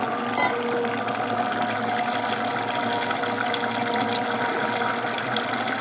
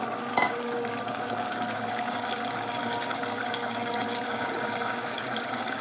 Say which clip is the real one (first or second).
first